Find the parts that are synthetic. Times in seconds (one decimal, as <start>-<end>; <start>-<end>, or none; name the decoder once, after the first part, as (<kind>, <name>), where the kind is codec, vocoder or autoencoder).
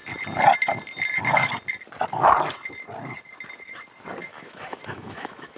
4.2-5.6 (autoencoder, DAC-VAE)